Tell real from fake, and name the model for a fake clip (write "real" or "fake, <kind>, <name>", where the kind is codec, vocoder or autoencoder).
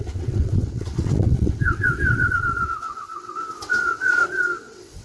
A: fake, vocoder, WaveNeXt